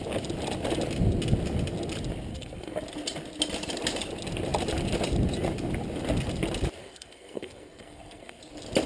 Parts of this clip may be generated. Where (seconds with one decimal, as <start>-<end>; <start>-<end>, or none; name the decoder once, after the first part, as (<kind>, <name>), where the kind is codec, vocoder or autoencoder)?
2.3-2.8 (codec, SNAC); 6.8-8.4